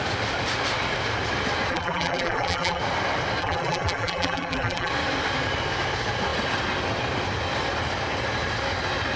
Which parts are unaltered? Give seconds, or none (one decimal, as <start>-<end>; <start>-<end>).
0.0-1.7; 2.8-3.4; 4.9-9.2